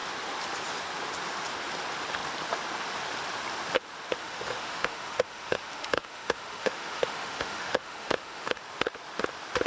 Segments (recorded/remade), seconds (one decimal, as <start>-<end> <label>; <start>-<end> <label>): 0.0-4.2 recorded; 4.2-8.6 remade; 8.6-9.7 recorded